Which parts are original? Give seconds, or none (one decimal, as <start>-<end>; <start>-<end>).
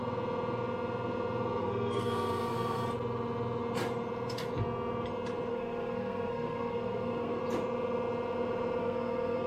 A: 0.0-1.6; 2.8-5.5; 7.4-8.8